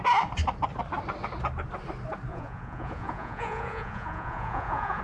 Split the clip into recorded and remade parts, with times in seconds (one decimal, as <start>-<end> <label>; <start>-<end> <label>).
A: 0.0-2.3 recorded; 2.3-5.0 remade